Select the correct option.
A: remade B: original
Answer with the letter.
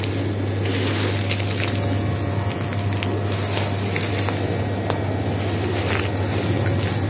B